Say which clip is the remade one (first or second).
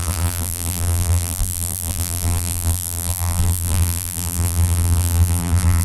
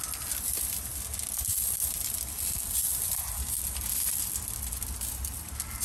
first